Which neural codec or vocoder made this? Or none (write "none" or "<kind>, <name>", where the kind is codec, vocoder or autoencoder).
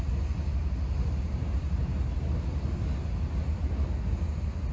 none